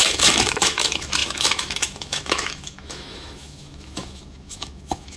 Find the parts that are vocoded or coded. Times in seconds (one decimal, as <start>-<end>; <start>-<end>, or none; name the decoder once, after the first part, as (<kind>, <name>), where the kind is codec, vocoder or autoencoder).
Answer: 0.0-5.2 (autoencoder, DAC-VAE)